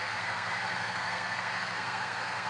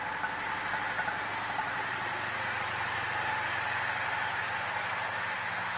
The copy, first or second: first